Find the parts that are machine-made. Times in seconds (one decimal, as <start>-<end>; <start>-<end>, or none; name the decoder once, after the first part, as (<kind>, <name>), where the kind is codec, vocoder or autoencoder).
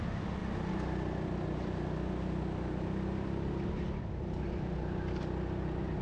none